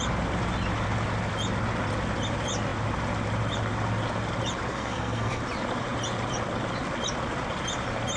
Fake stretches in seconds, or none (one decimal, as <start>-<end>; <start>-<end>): 4.7-5.4